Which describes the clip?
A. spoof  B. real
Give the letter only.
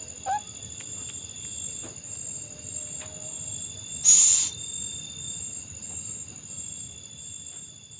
B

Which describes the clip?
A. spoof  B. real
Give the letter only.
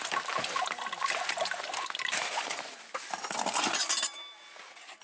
B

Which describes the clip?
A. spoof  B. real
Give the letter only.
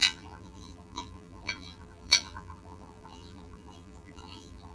A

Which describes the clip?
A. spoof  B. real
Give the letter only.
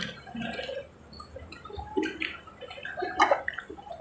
B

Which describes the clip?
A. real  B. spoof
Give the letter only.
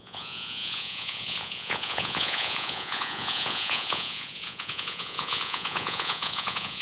B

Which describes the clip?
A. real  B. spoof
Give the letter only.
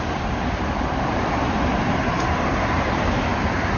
B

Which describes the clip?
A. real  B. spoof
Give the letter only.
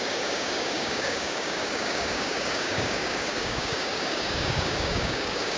B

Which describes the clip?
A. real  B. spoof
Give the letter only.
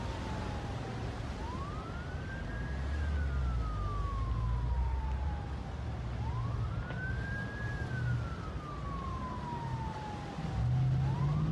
A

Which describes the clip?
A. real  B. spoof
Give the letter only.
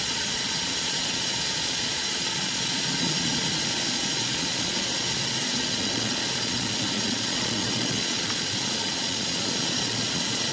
B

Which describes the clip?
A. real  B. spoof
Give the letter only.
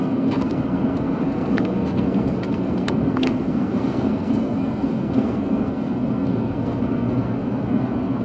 B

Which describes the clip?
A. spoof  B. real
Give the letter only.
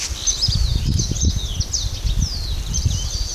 B